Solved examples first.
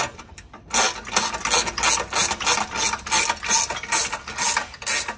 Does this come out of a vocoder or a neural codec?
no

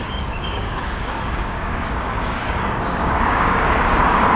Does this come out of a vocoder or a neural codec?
yes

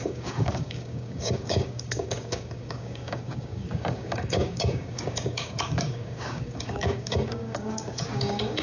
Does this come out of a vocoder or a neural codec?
yes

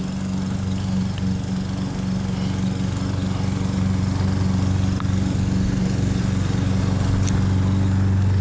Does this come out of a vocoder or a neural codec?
no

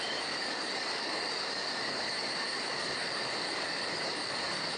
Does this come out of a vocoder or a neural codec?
yes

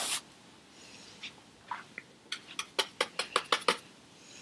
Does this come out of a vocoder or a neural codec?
no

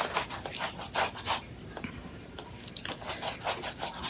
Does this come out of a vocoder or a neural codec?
no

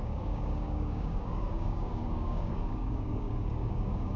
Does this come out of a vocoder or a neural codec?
yes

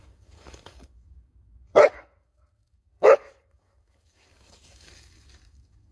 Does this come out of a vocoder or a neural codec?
yes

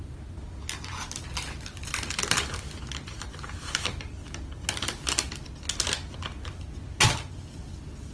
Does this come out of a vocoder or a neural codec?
no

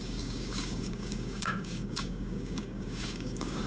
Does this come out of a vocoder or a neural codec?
yes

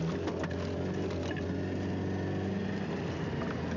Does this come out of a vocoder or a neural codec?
no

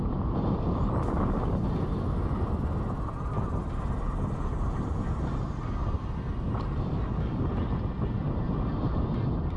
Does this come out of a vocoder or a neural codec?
no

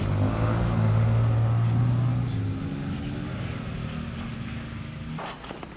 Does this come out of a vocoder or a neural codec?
no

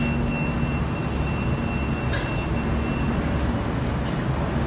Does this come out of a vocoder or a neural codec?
no